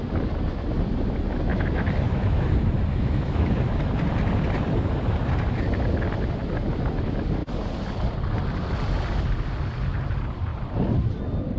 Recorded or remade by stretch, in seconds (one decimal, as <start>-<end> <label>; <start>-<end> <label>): 0.0-1.5 recorded; 1.5-3.6 remade; 3.6-11.6 recorded

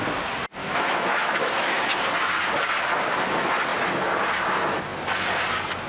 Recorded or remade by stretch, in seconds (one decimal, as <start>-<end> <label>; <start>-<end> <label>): 0.0-0.6 recorded; 0.6-1.8 remade; 1.8-5.9 recorded

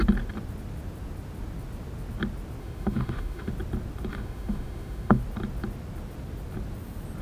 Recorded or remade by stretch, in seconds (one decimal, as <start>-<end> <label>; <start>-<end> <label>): 0.0-2.6 recorded; 2.6-3.5 remade; 3.5-4.1 recorded; 4.1-5.2 remade; 5.2-7.2 recorded

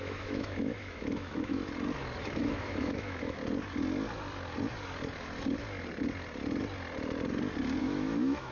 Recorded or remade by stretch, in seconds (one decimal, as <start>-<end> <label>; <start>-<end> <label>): 0.0-1.6 remade; 1.6-2.2 recorded; 2.2-3.4 remade; 3.4-7.8 recorded; 7.8-8.5 remade

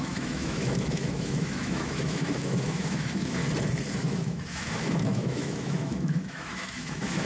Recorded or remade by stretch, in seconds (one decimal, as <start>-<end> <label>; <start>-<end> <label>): 0.0-3.4 remade; 3.4-3.9 recorded; 3.9-7.3 remade

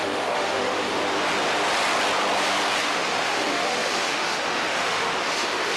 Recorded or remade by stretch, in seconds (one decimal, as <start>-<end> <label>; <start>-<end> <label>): 0.0-1.0 remade; 1.0-2.8 recorded; 2.8-5.8 remade

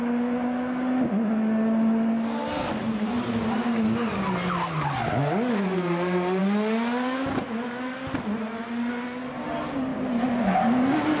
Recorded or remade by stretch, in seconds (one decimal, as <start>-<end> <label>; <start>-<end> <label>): 0.0-11.2 recorded

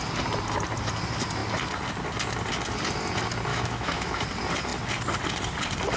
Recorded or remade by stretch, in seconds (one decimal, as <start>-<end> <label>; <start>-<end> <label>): 0.0-3.5 recorded; 3.5-4.1 remade; 4.1-6.0 recorded